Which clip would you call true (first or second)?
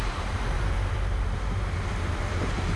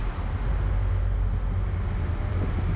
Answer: second